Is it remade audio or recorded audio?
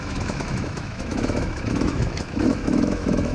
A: remade